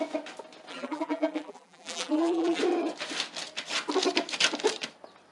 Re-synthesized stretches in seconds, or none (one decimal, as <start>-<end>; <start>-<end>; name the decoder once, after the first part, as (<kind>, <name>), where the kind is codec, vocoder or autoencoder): 0.7-2.6 (vocoder, BigVGAN v2)